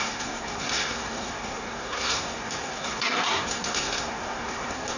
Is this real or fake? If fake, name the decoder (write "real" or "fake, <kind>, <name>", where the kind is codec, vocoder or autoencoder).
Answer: fake, codec, SNAC